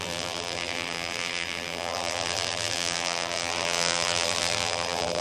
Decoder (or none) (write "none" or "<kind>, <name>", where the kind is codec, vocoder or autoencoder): vocoder, BigVGAN v2